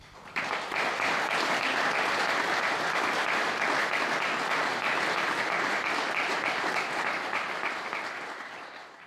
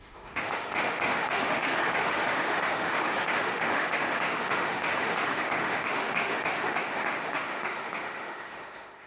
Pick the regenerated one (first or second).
second